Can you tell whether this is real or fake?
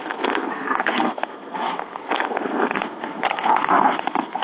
fake